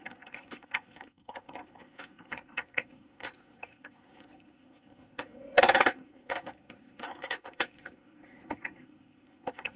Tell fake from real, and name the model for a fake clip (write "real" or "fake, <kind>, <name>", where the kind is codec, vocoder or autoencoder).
fake, codec, SNAC